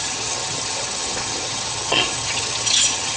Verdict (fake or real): fake